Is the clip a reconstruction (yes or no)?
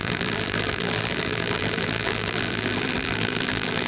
yes